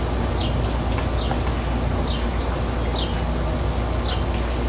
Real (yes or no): yes